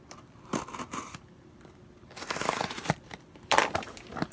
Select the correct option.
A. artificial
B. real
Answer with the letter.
A